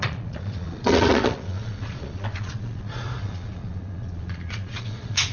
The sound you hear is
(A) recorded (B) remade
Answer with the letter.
B